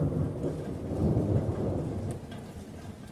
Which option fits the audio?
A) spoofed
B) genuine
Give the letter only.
B